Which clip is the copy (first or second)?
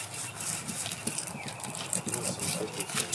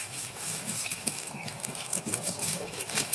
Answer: second